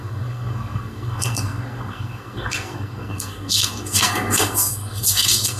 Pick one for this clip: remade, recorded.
remade